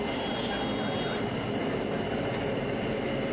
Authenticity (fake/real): real